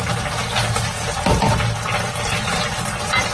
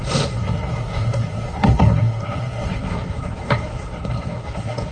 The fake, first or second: second